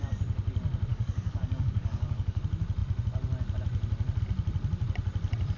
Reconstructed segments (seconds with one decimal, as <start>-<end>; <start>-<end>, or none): 0.9-2.4